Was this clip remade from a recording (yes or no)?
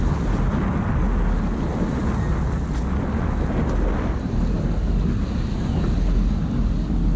no